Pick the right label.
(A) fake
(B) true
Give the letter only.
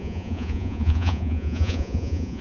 A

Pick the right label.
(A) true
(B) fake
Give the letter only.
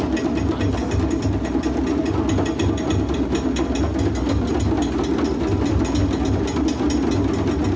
A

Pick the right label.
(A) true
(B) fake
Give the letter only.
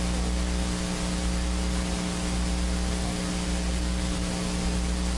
A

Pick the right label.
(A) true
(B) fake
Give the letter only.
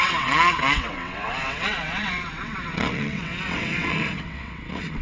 B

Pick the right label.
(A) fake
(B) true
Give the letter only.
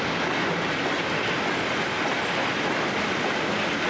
B